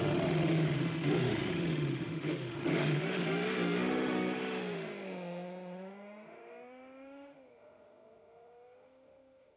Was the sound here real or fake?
fake